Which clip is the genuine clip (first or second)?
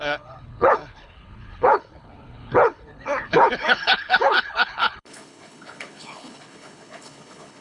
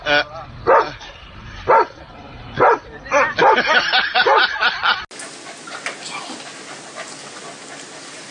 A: second